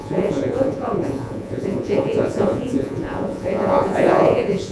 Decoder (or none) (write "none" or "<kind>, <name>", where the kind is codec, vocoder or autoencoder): vocoder, Vocos